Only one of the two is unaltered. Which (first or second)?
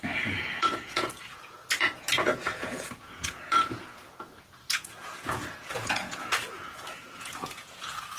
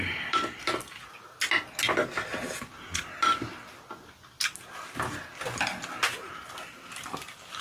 second